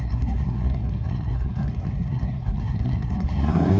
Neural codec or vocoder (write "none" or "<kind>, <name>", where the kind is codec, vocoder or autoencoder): codec, SNAC